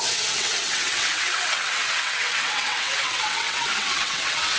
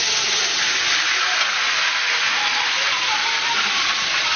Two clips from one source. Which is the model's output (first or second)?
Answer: first